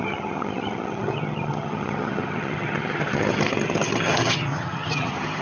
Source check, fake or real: fake